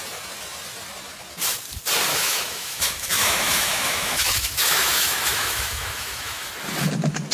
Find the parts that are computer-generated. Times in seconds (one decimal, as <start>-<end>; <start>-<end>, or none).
2.1-6.5